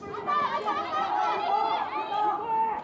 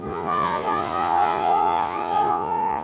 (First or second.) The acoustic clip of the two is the first